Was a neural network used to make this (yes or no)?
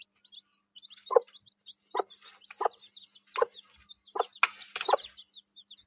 no